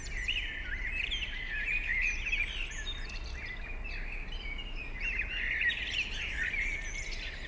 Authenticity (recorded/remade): recorded